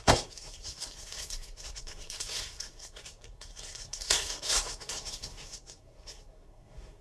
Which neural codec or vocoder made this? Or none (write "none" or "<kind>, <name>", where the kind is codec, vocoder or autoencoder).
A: codec, SNAC